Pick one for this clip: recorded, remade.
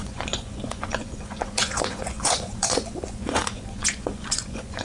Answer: remade